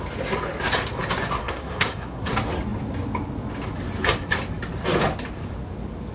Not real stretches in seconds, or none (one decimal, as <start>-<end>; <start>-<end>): 1.4-2.3